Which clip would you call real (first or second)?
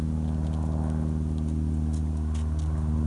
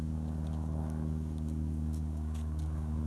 first